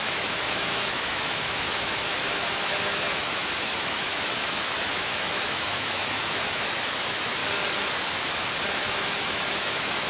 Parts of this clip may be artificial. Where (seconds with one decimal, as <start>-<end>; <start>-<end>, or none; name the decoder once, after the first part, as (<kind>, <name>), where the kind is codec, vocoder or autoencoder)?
0.0-7.4 (autoencoder, DAC-VAE); 8.6-10.1